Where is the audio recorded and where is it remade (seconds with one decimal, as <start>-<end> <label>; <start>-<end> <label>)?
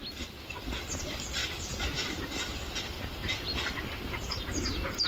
0.0-1.4 recorded; 1.4-2.1 remade; 2.1-5.1 recorded